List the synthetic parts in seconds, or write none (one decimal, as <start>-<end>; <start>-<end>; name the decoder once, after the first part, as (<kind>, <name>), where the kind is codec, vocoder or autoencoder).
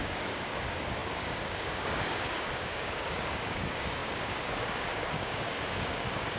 0.0-6.4 (codec, DAC)